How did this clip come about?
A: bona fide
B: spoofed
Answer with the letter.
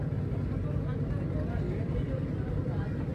A